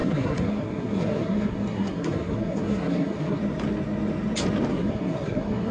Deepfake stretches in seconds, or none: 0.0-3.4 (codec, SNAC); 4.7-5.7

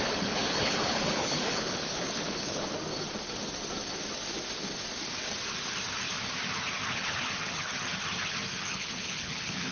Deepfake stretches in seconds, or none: 0.0-2.7 (codec, HILCodec); 6.9-7.7; 8.6-9.7

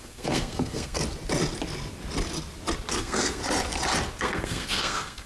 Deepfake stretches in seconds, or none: 0.0-1.0 (codec, SNAC); 2.9-3.4; 4.2-5.3

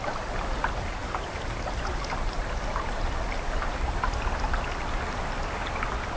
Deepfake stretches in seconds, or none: none

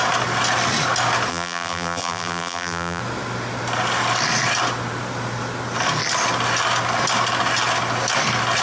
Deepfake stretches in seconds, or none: 1.3-3.0 (vocoder, BigVGAN v2)

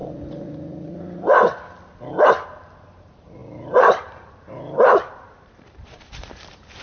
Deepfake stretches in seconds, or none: 2.3-6.8 (vocoder, BigVGAN v2)

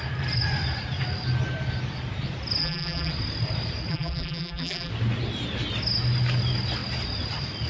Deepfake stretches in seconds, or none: 2.6-3.1 (vocoder, BigVGAN v2); 3.9-4.9